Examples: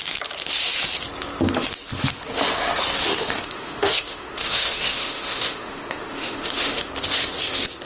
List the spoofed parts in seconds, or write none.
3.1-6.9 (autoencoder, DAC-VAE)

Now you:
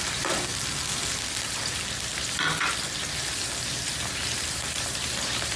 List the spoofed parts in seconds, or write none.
0.0-0.5 (vocoder, BigVGAN v2); 3.9-5.6